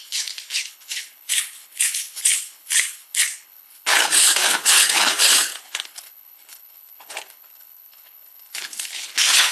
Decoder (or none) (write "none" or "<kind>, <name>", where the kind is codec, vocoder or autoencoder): codec, HILCodec